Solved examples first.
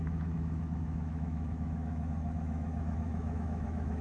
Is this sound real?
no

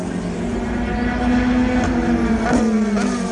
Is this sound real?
yes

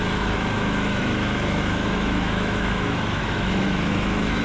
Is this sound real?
no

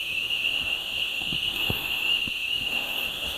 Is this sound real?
no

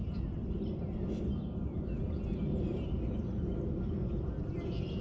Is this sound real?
yes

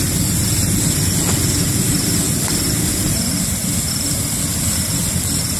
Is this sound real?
yes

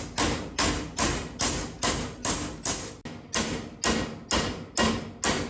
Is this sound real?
yes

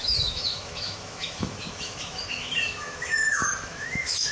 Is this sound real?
no